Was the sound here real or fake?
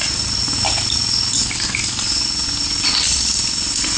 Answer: real